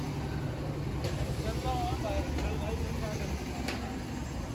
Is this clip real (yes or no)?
yes